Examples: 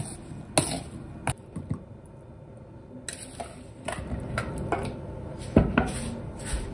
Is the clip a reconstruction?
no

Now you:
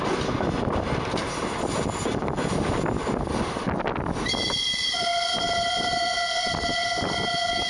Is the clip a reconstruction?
no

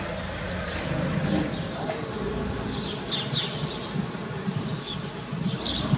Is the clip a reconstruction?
no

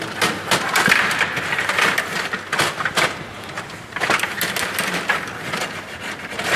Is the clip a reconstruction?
no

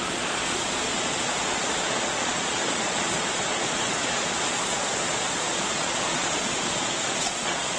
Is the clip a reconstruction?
yes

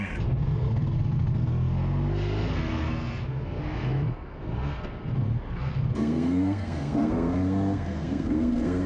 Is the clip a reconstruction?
yes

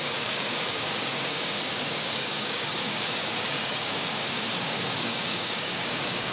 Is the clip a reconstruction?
yes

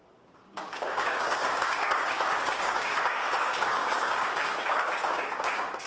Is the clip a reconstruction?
yes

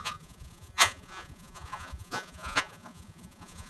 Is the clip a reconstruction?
yes